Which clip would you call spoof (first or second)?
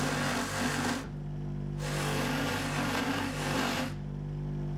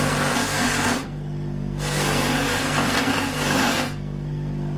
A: second